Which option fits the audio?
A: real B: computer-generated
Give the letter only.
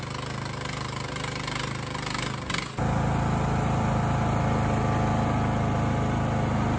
A